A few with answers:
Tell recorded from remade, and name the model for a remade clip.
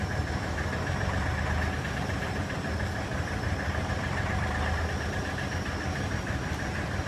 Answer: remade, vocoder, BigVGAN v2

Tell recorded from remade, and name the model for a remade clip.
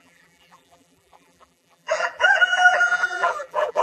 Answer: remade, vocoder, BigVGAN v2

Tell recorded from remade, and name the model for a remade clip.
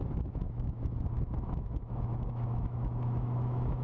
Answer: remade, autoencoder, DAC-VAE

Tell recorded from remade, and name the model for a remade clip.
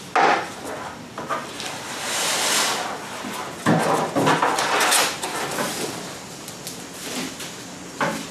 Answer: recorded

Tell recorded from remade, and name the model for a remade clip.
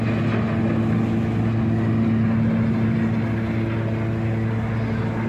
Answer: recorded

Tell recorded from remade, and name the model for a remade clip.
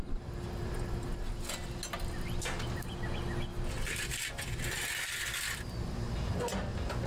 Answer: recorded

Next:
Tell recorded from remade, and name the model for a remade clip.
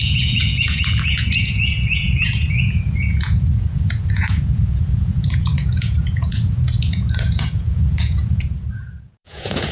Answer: remade, vocoder, Vocos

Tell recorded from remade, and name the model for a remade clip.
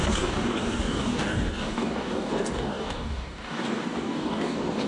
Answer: remade, codec, DAC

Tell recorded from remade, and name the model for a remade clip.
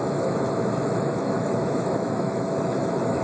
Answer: remade, autoencoder, DAC-VAE